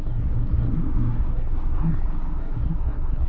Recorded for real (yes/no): no